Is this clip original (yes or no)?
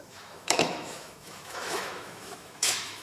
no